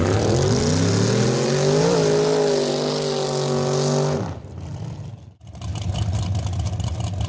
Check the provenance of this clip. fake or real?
real